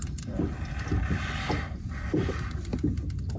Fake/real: real